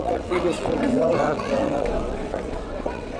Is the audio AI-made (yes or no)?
yes